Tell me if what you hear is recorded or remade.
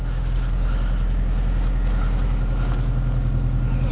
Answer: recorded